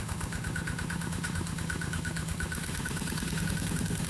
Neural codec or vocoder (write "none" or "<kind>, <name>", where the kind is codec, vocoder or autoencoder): autoencoder, DAC-VAE